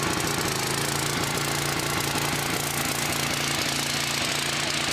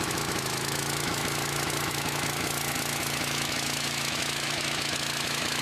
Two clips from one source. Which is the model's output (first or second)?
second